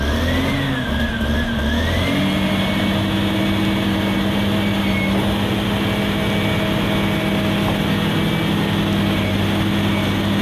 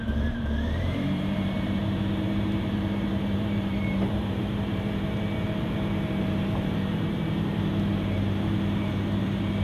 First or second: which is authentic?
first